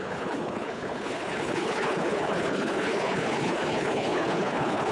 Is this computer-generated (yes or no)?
yes